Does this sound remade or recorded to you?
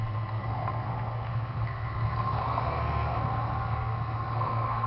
remade